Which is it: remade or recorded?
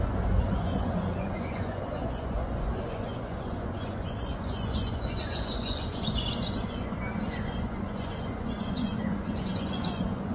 remade